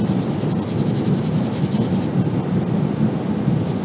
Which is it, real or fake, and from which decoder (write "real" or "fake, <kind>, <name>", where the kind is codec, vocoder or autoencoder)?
real